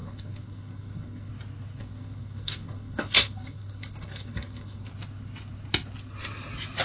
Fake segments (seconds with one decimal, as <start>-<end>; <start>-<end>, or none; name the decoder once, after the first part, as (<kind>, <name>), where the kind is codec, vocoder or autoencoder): 0.0-1.3 (codec, SNAC); 1.8-4.9